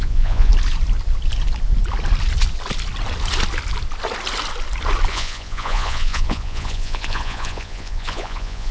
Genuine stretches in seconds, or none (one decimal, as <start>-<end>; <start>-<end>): 0.5-5.1